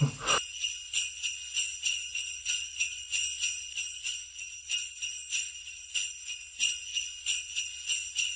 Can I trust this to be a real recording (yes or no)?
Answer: yes